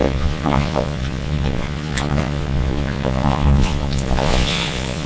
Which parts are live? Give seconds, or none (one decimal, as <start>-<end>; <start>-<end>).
none